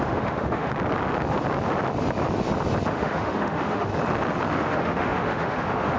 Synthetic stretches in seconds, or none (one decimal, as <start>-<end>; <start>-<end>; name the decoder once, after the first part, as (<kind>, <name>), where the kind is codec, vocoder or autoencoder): 0.0-0.7 (autoencoder, DAC-VAE); 2.9-3.9; 4.5-6.0